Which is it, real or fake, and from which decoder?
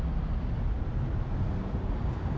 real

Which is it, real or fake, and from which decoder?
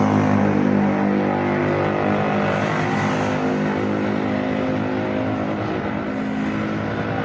real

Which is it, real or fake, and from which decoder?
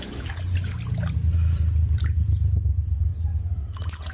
real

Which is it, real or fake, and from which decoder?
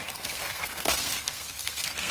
fake, codec, SNAC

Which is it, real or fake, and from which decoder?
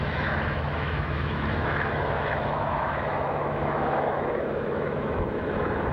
fake, autoencoder, DAC-VAE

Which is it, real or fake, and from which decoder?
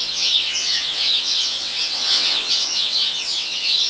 fake, vocoder, WaveNeXt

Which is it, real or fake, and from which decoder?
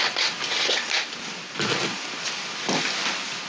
real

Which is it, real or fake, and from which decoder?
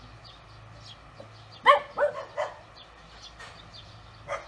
real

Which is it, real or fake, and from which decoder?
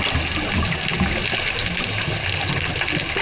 real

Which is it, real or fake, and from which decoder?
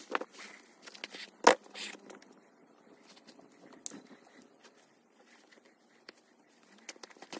real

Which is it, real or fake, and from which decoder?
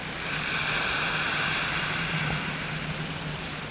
real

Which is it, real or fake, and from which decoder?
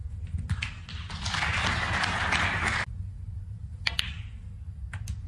real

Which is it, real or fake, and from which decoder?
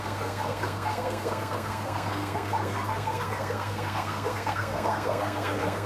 fake, codec, SNAC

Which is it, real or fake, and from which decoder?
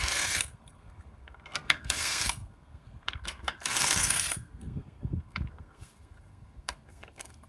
fake, codec, SNAC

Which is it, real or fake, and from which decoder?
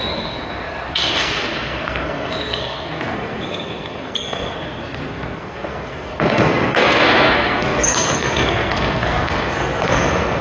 fake, codec, SNAC